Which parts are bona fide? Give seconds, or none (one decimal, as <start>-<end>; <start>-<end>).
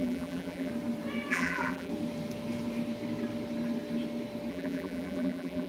0.7-1.3; 1.9-4.5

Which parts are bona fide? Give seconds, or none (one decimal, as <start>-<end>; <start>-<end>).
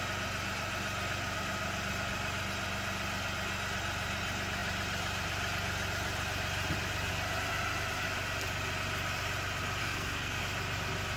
0.0-9.8; 10.4-11.2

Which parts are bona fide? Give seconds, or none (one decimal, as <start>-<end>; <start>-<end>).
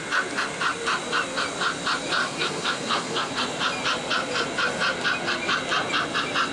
0.0-2.2; 3.3-6.5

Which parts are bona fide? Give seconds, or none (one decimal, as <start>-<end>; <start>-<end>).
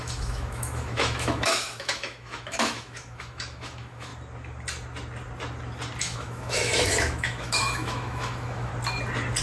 4.1-6.0; 8.7-9.4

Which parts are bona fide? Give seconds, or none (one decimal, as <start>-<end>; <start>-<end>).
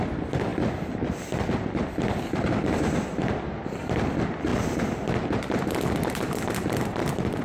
0.0-7.4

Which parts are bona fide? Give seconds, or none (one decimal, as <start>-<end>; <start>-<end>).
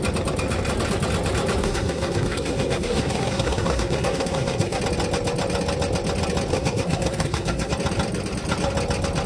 0.0-1.6; 4.8-6.5; 7.7-9.3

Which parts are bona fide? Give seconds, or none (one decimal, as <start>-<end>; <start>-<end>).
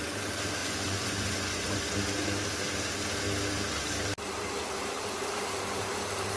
0.0-0.6; 1.8-6.4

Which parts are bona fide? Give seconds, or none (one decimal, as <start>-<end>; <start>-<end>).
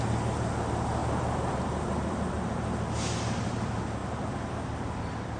0.0-1.0; 2.5-5.4